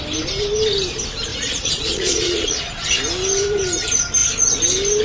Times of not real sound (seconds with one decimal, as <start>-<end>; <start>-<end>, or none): 1.3-2.7